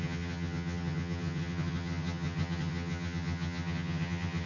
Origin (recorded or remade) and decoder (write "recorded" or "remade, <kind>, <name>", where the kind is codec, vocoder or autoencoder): remade, vocoder, HiFi-GAN